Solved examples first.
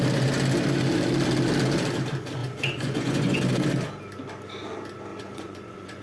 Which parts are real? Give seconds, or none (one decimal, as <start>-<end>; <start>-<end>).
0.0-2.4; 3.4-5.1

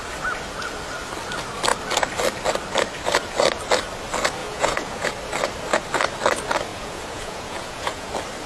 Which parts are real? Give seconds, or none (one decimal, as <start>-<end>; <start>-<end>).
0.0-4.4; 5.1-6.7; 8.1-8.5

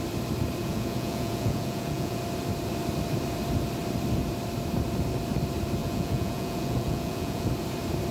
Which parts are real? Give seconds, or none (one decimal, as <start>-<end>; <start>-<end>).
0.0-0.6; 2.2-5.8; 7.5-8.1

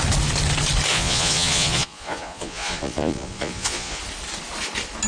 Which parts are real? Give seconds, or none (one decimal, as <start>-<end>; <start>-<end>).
0.0-0.9; 4.0-5.1

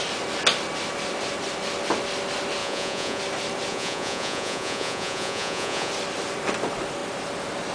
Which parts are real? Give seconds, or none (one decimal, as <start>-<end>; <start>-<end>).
0.0-2.6; 3.2-3.7; 5.9-7.7

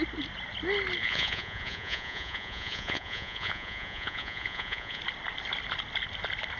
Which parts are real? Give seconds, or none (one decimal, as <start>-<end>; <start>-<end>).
0.0-1.0; 5.0-6.6

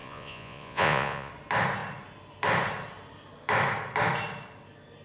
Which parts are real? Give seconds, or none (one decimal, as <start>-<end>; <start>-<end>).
1.3-5.0